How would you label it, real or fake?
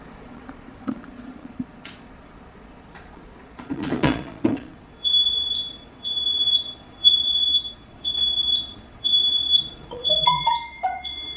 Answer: fake